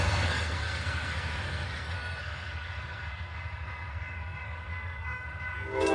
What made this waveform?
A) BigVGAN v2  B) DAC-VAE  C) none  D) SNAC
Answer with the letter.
D